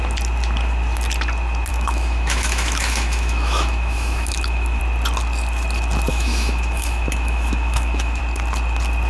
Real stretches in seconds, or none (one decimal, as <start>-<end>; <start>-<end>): 0.0-1.7; 4.8-6.1; 8.2-9.1